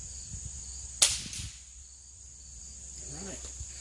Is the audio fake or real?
real